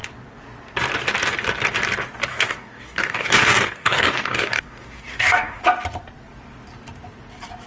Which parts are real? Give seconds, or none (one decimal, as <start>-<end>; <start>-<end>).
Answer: 0.0-2.3; 5.6-7.7